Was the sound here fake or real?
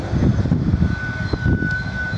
real